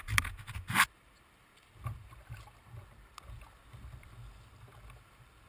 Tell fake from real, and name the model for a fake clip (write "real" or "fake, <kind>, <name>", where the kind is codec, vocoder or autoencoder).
real